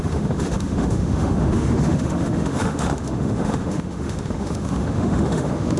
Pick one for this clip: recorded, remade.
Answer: remade